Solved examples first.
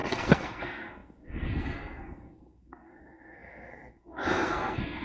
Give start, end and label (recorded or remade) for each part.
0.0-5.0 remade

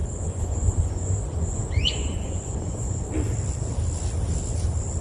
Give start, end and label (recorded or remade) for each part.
0.0-3.0 remade; 3.0-5.0 recorded

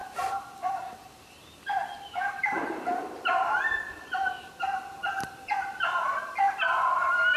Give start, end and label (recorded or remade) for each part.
0.0-4.4 remade; 4.4-5.0 recorded; 5.0-6.2 remade; 6.2-7.4 recorded

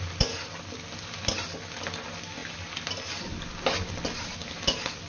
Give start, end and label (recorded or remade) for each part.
0.0-5.1 recorded

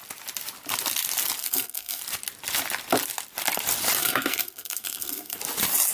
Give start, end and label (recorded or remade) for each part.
0.0-1.4 recorded; 1.4-2.0 remade; 2.0-4.0 recorded; 4.0-5.4 remade; 5.4-5.9 recorded

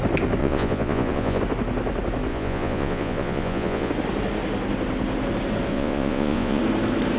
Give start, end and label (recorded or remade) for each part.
0.0-0.4 recorded; 0.4-1.4 remade; 1.4-2.3 recorded; 2.3-3.9 remade; 3.9-5.7 recorded; 5.7-6.6 remade; 6.6-7.2 recorded